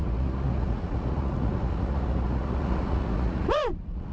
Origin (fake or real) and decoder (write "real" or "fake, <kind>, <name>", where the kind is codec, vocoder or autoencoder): fake, vocoder, Vocos